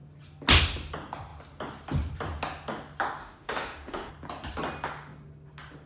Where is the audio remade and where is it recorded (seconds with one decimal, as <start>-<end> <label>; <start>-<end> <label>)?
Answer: 0.0-3.2 recorded; 3.2-4.1 remade; 4.1-5.9 recorded